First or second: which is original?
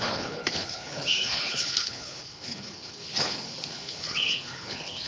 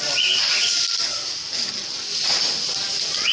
second